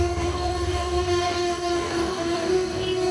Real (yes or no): no